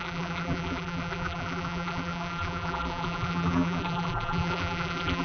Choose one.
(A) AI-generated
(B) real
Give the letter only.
A